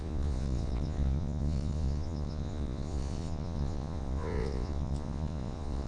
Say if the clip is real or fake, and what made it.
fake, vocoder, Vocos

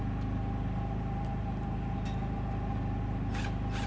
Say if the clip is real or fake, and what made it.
real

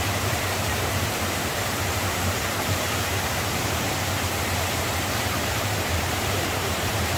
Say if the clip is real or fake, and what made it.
fake, vocoder, BigVGAN v2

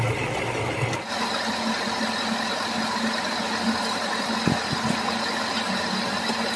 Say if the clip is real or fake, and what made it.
real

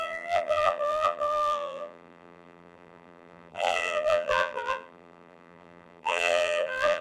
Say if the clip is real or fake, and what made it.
fake, vocoder, BigVGAN v2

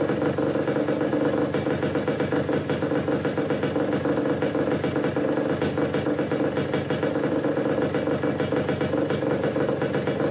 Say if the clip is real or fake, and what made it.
real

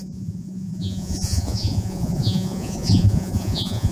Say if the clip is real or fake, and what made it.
fake, vocoder, Vocos